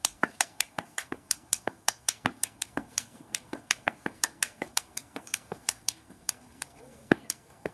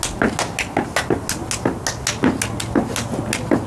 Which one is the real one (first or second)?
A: second